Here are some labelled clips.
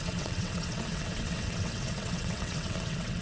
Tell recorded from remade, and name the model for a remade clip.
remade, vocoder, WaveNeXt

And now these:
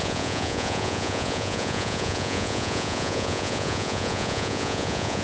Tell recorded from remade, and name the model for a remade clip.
remade, vocoder, Vocos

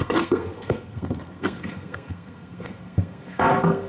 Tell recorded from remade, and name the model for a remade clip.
remade, codec, SNAC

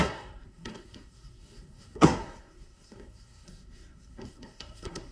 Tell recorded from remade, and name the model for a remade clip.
remade, codec, SNAC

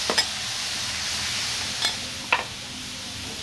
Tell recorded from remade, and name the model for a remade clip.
recorded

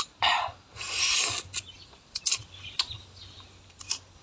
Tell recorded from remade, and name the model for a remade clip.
recorded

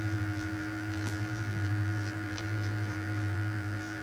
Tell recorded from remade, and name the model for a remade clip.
remade, vocoder, BigVGAN v2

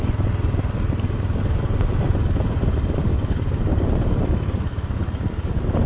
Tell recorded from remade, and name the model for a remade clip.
recorded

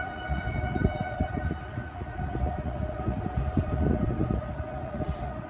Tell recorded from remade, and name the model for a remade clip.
remade, vocoder, Vocos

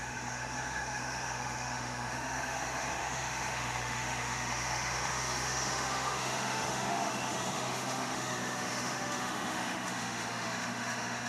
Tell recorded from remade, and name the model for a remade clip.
remade, autoencoder, DAC-VAE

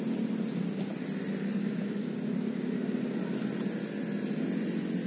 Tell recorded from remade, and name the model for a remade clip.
recorded